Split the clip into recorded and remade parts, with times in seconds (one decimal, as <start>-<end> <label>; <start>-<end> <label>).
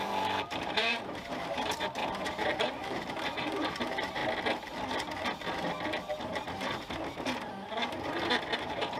0.0-4.2 remade; 4.2-8.6 recorded; 8.6-9.0 remade